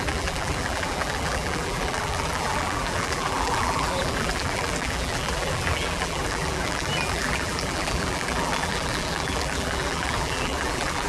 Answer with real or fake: fake